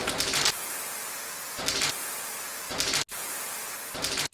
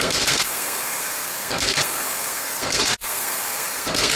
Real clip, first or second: first